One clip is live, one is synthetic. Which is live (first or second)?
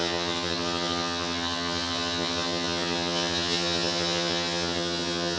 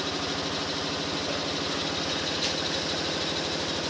second